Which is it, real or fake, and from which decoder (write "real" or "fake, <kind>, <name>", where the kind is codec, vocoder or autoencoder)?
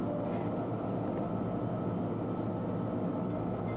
real